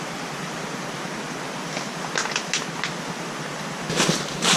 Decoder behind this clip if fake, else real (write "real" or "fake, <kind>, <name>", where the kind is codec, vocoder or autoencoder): real